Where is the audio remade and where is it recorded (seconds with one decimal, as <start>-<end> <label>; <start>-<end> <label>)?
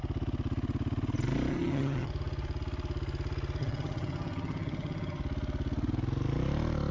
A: 0.0-1.5 recorded; 1.5-2.1 remade; 2.1-3.6 recorded; 3.6-5.2 remade; 5.2-6.9 recorded